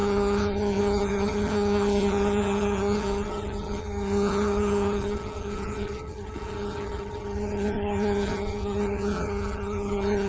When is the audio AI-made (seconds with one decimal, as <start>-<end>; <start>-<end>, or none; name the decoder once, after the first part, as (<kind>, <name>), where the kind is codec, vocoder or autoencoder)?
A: 0.0-10.3 (vocoder, HiFi-GAN)